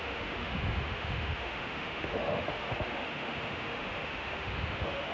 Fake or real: fake